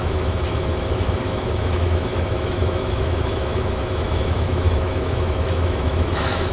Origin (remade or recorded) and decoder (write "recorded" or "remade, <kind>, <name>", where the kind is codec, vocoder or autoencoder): remade, autoencoder, DAC-VAE